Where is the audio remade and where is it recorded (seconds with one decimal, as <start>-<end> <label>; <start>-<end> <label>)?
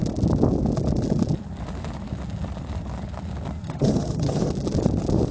0.0-3.6 recorded; 3.6-4.5 remade; 4.5-5.3 recorded